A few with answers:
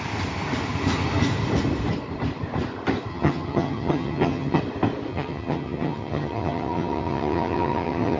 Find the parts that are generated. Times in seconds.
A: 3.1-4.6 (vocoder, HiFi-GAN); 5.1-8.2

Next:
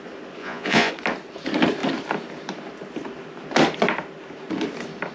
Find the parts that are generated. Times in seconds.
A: 0.4-0.9 (vocoder, Vocos)

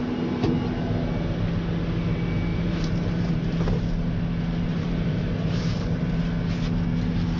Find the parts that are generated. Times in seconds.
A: 2.5-3.6 (vocoder, BigVGAN v2); 4.7-6.2

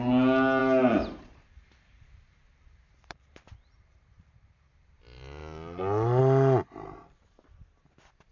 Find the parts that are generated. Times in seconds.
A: 0.6-4.9 (vocoder, BigVGAN v2)

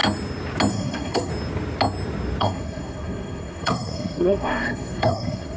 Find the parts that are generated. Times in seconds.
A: 0.7-1.3 (codec, SNAC); 2.4-5.6

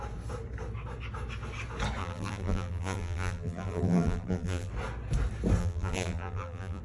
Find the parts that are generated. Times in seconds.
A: 2.0-4.7 (vocoder, BigVGAN v2); 5.6-6.8

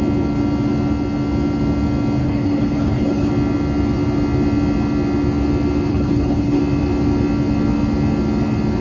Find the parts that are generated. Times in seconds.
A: 2.2-3.3 (codec, HILCodec); 5.9-6.6